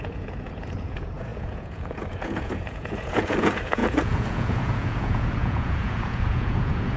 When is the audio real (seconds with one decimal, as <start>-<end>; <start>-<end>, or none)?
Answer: none